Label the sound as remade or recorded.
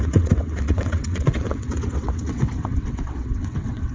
remade